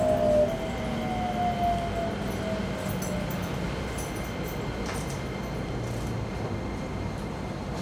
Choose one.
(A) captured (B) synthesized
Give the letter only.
A